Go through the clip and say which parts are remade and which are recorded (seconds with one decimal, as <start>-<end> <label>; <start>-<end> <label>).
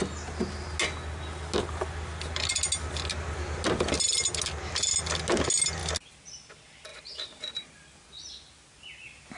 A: 0.0-6.9 recorded; 6.9-7.7 remade; 7.7-9.4 recorded